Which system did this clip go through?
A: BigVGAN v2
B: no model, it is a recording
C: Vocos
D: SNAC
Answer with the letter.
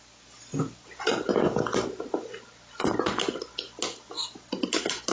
B